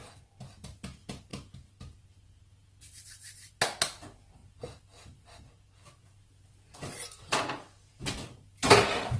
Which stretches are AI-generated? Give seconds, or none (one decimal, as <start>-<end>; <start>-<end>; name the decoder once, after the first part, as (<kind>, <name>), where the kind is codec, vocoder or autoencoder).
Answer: none